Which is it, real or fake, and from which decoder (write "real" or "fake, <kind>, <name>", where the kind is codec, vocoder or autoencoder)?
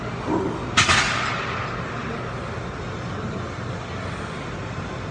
real